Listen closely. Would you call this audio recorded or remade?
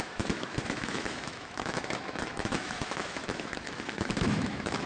remade